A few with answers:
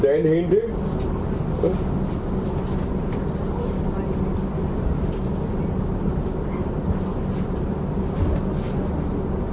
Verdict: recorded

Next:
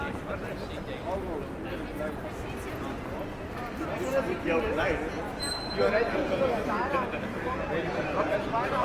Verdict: recorded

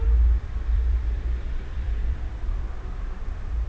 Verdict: remade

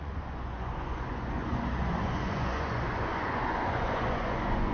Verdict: remade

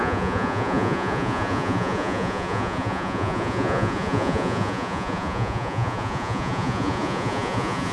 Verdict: remade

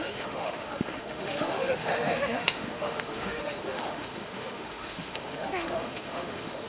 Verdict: remade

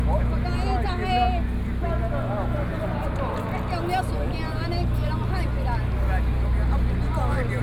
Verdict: recorded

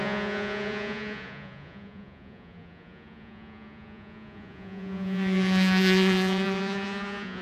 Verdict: remade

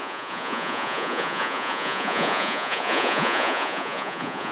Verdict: remade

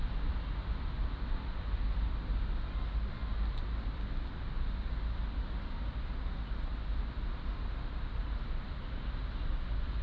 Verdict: recorded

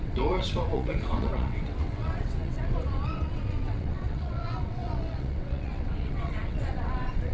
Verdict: remade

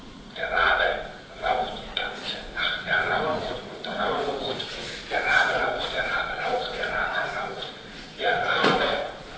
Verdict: remade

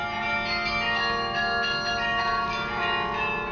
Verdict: recorded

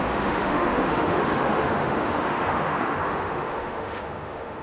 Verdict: remade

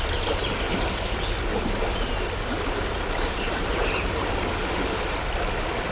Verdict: recorded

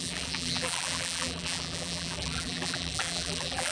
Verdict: remade